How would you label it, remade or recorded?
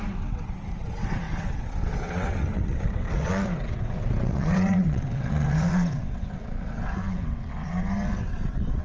remade